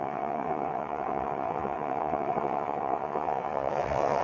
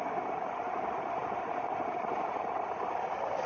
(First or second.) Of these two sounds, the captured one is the second